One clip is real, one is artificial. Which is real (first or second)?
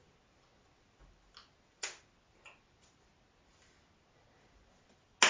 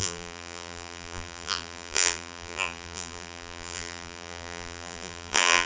first